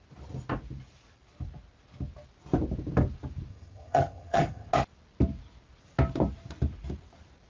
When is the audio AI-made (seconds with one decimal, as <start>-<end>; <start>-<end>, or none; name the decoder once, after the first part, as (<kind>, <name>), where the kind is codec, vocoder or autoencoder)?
3.5-4.7 (vocoder, HiFi-GAN)